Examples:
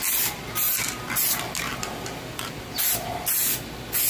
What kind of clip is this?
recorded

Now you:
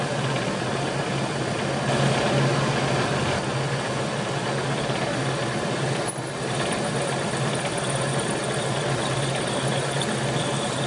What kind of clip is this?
recorded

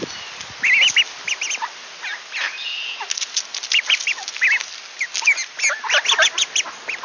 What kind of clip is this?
recorded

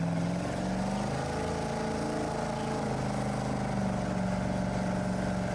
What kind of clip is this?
recorded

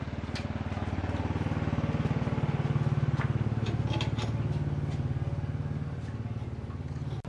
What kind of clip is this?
recorded